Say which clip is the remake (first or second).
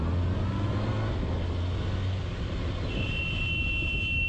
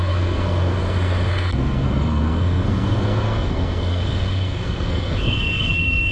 second